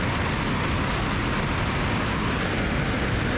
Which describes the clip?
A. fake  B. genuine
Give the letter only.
B